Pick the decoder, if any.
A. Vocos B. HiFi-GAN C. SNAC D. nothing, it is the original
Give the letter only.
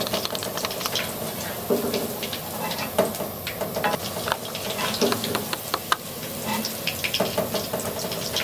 D